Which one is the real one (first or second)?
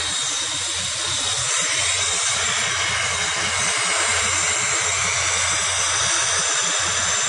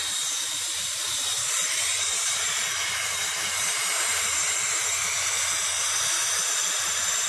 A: first